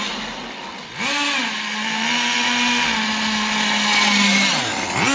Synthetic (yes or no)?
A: no